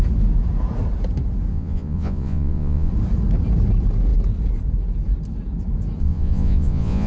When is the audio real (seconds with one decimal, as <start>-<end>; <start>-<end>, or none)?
0.0-1.5; 2.9-6.0